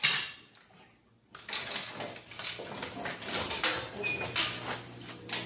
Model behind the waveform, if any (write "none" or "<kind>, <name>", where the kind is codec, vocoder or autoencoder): none